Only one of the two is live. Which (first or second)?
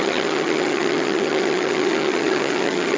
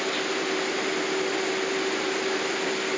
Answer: second